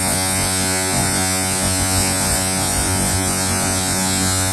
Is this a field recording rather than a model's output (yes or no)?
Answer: no